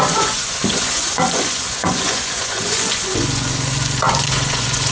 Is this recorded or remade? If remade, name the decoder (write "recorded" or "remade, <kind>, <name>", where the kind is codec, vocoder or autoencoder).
remade, vocoder, Vocos